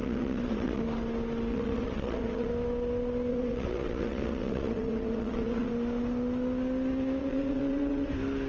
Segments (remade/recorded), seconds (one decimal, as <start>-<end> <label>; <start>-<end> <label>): 0.0-0.8 remade; 0.8-1.5 recorded; 1.5-2.5 remade; 2.5-3.3 recorded; 3.3-5.7 remade; 5.7-7.2 recorded; 7.2-8.1 remade; 8.1-8.5 recorded